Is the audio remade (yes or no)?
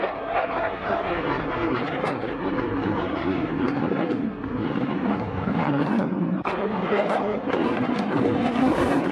yes